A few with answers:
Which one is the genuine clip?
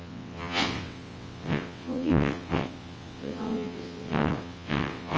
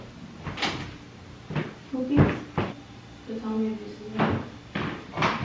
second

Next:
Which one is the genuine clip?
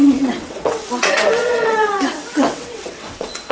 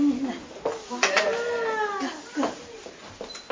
second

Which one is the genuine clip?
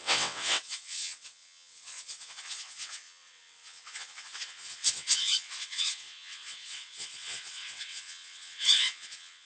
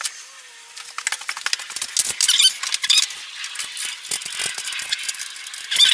second